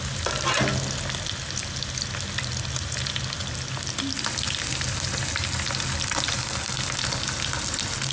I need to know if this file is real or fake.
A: real